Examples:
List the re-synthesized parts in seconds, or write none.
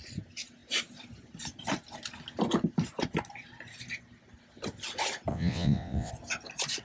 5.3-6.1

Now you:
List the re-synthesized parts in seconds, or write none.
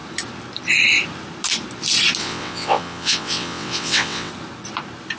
2.2-4.3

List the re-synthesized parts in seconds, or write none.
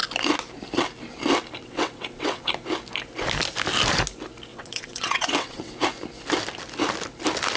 1.6-2.4; 4.5-5.7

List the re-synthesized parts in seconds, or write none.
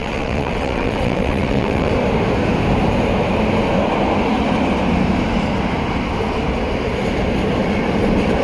0.0-1.9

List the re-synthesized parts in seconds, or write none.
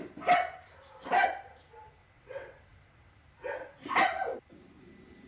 2.0-3.1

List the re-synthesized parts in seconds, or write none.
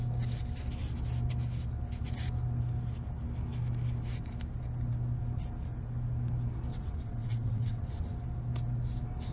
6.7-7.9